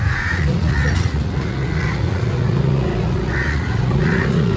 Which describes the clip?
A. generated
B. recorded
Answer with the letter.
A